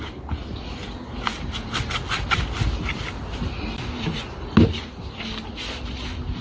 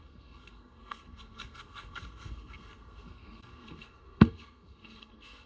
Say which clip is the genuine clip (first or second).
first